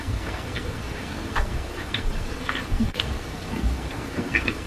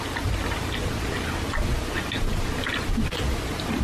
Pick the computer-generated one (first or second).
first